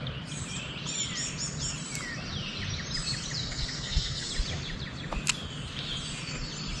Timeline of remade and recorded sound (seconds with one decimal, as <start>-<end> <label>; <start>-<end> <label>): 0.0-3.4 recorded; 3.4-4.3 remade; 4.3-6.8 recorded